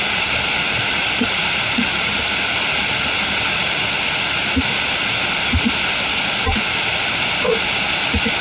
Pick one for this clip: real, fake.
real